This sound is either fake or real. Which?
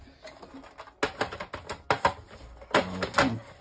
real